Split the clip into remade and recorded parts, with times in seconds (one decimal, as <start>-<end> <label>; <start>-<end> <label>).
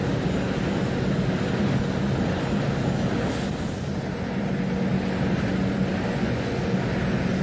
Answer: 0.0-6.1 recorded; 6.1-6.6 remade; 6.6-7.4 recorded